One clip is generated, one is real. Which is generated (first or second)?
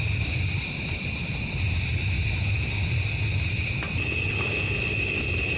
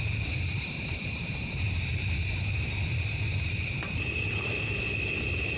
second